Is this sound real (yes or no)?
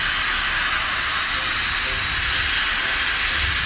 yes